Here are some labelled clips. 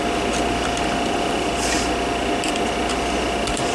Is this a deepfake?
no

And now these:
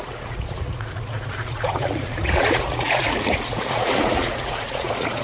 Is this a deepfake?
yes